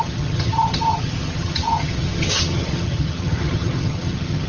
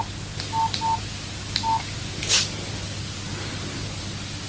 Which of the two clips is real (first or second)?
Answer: second